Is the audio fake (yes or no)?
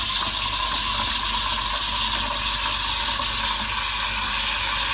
no